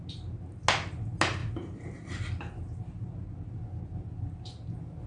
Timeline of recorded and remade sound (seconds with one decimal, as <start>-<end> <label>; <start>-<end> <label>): 0.0-5.1 recorded

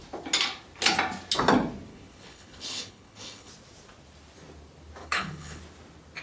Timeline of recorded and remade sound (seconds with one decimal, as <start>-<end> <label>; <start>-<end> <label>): 0.0-1.9 recorded; 1.9-3.5 remade; 3.5-5.0 recorded; 5.0-5.6 remade; 5.6-6.2 recorded

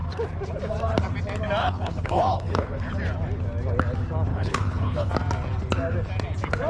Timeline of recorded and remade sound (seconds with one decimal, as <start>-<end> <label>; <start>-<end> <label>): 0.0-1.6 recorded; 1.6-2.9 remade; 2.9-4.3 recorded; 4.3-5.1 remade; 5.1-6.7 recorded

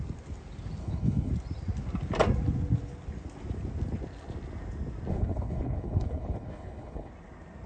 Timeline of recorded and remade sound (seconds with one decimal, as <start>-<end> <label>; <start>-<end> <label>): 0.0-0.8 recorded; 0.8-1.3 remade; 1.3-5.1 recorded; 5.1-7.1 remade; 7.1-7.7 recorded

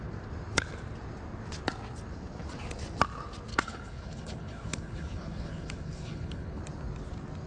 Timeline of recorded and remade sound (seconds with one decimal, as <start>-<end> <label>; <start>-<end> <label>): 0.0-3.5 recorded; 3.5-6.6 remade; 6.6-7.5 recorded

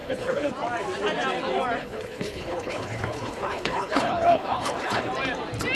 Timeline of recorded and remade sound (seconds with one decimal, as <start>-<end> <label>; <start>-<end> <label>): 0.0-0.5 remade; 0.5-1.8 recorded; 1.8-5.1 remade; 5.1-5.7 recorded

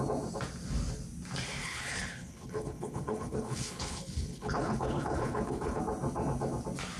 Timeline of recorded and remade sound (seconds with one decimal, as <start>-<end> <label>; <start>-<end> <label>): 0.0-1.6 recorded; 1.6-5.8 remade; 5.8-7.0 recorded